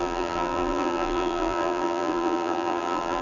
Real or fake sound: fake